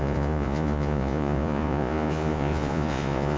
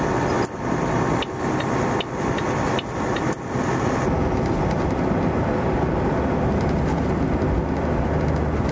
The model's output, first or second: first